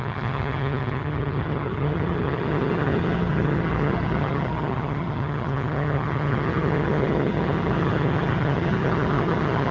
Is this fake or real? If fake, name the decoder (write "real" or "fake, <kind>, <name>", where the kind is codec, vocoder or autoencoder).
fake, vocoder, HiFi-GAN